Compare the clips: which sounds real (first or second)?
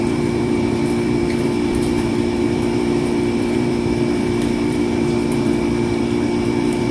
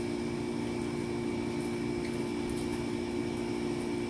second